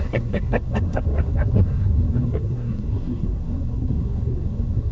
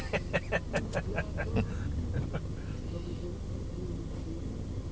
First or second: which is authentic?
second